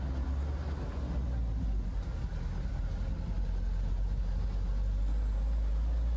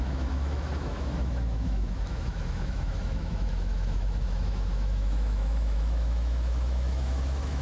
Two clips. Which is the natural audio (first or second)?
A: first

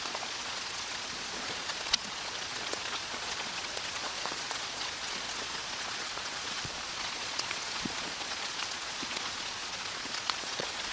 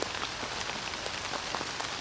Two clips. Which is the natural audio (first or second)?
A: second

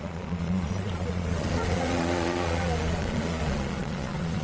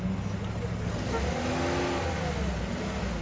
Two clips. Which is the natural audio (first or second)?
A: second